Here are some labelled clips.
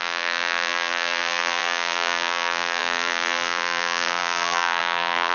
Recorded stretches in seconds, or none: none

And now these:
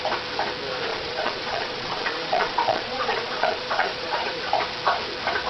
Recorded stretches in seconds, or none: 0.0-0.9; 4.2-5.5

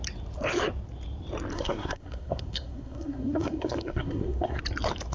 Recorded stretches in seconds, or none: 0.0-1.5; 4.6-5.1

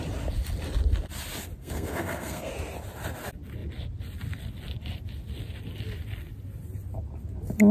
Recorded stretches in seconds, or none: 0.0-1.6; 2.5-7.7